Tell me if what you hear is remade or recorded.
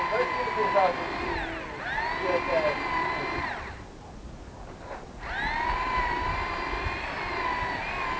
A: recorded